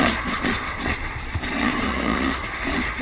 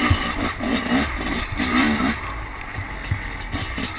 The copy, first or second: first